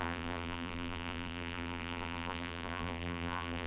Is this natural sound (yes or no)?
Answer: no